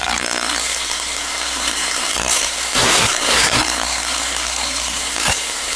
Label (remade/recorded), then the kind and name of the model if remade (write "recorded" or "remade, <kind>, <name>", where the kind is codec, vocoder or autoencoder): remade, codec, SNAC